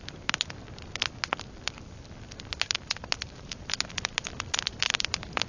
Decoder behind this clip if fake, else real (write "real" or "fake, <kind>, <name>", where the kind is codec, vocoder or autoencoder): real